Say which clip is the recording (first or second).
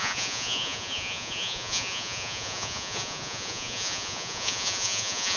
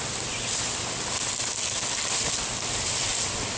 second